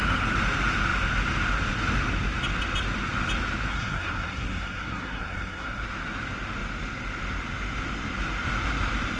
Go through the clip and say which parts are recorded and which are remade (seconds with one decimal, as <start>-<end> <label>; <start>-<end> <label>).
0.0-3.7 recorded; 3.7-5.8 remade; 5.8-9.2 recorded